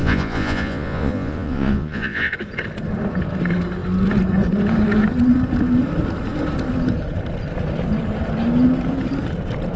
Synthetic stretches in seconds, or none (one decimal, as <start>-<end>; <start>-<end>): 0.0-2.3